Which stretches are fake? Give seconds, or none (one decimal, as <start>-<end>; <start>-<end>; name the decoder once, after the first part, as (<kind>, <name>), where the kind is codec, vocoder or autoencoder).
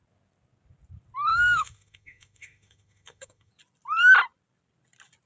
1.3-3.5 (autoencoder, DAC-VAE)